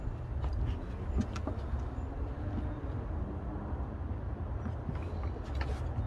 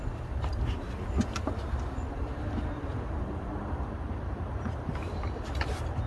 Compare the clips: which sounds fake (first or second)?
second